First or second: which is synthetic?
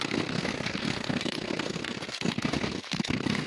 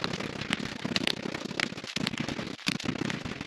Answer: first